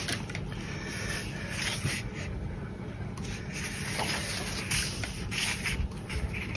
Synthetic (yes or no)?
no